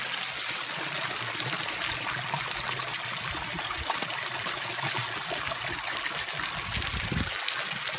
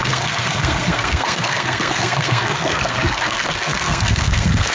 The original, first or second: first